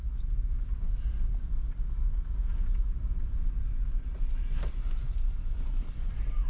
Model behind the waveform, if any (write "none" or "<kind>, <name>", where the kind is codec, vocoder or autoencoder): none